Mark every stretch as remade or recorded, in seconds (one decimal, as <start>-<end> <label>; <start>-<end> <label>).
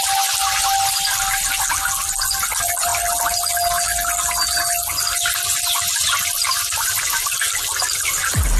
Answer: 0.0-8.6 recorded